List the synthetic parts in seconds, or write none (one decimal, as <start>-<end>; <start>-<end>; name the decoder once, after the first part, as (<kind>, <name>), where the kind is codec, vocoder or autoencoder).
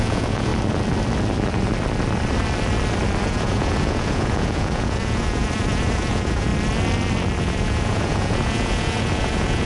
0.0-0.5 (vocoder, Vocos); 3.2-6.5; 7.4-9.7